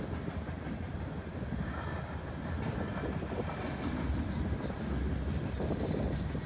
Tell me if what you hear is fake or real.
real